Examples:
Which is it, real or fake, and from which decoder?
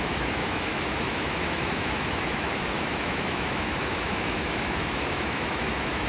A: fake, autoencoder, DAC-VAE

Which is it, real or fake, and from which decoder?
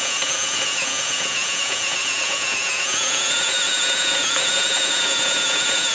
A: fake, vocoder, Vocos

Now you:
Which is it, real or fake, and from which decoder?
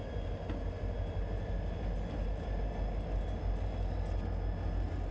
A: real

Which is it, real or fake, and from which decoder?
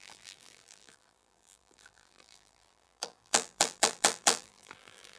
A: fake, vocoder, BigVGAN v2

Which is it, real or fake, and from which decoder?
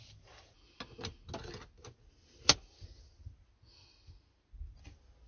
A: real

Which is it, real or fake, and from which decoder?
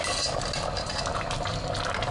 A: real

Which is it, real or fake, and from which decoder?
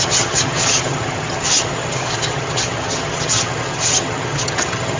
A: fake, vocoder, HiFi-GAN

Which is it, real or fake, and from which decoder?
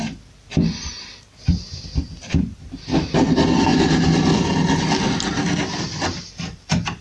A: real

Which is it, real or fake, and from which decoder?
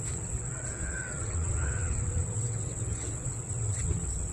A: fake, vocoder, WaveNeXt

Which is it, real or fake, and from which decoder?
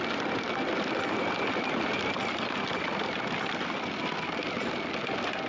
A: real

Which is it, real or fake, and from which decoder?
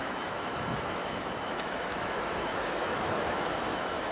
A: fake, autoencoder, DAC-VAE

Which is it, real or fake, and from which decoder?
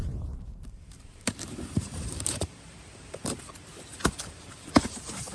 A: fake, vocoder, BigVGAN v2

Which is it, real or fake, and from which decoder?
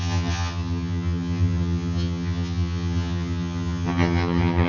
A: fake, vocoder, HiFi-GAN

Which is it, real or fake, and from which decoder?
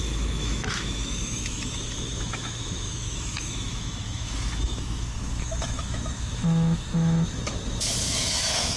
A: fake, autoencoder, DAC-VAE